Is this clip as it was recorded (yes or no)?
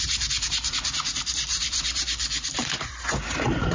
no